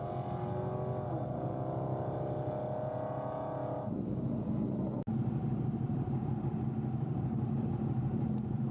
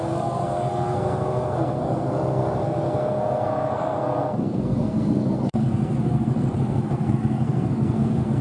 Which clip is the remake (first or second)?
second